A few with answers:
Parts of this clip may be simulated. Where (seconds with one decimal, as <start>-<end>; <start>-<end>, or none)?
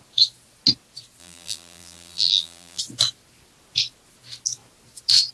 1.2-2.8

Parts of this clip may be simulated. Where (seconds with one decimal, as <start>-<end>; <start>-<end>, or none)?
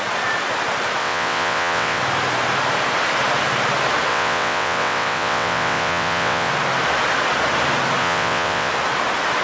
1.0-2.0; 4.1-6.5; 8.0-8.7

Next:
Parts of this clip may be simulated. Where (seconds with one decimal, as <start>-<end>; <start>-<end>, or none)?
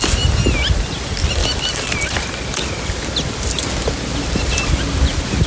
none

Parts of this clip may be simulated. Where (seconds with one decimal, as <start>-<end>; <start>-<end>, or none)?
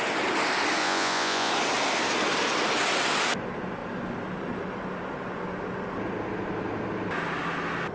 0.8-1.5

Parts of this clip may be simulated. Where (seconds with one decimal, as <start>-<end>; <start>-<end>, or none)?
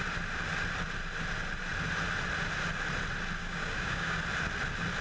3.4-4.2